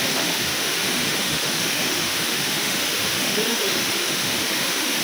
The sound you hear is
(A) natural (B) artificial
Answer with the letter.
B